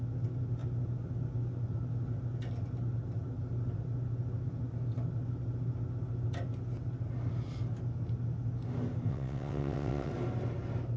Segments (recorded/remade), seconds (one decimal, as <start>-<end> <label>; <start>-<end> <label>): 0.0-9.1 recorded; 9.1-10.1 remade; 10.1-11.0 recorded